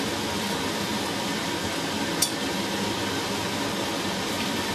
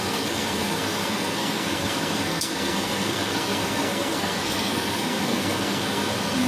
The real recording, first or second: first